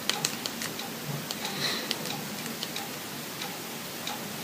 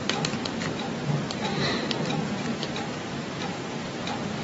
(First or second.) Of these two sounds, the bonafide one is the first